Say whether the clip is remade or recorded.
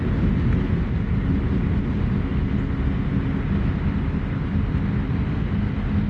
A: recorded